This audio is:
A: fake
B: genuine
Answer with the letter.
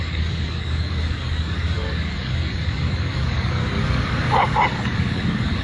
A